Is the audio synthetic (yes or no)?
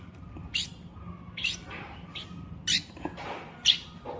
no